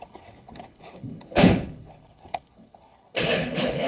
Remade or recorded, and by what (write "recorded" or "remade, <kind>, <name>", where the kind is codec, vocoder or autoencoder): remade, codec, HILCodec